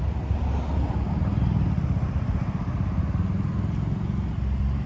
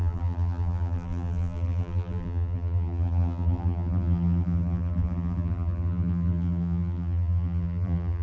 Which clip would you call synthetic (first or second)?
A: second